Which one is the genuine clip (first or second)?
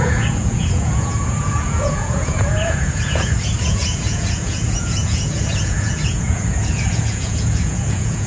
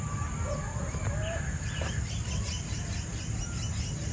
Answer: second